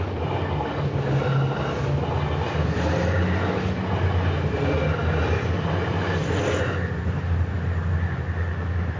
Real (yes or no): yes